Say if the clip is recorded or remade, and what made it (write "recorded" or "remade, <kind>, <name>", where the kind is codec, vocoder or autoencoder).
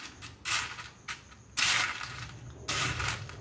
recorded